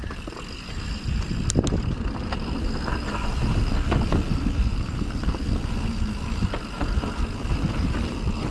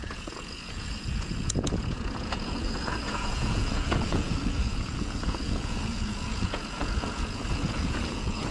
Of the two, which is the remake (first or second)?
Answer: second